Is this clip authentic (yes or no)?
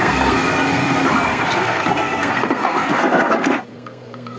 no